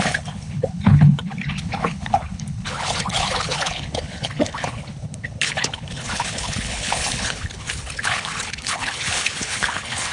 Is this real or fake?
fake